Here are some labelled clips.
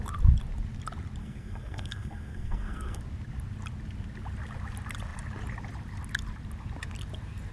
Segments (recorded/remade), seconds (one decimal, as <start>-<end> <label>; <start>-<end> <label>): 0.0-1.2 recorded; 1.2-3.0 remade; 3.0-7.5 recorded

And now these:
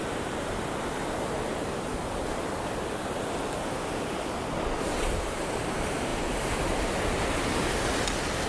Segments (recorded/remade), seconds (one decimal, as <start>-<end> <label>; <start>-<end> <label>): 0.0-8.5 recorded

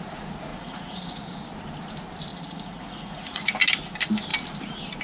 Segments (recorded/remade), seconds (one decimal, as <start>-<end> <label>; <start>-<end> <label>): 0.0-0.5 recorded; 0.5-1.2 remade; 1.2-2.3 recorded; 2.3-3.4 remade; 3.4-5.0 recorded

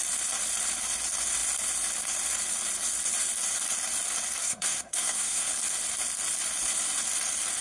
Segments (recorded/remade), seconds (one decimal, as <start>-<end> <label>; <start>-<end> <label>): 0.0-4.4 recorded; 4.4-5.5 remade; 5.5-7.6 recorded

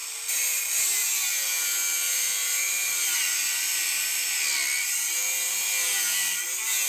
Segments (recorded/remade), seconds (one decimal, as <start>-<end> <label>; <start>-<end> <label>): 0.0-0.6 remade; 0.6-1.0 recorded; 1.0-4.4 remade; 4.4-6.9 recorded

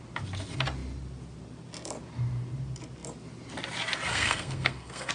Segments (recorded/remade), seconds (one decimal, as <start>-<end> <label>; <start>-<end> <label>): 0.0-4.1 recorded; 4.1-5.1 remade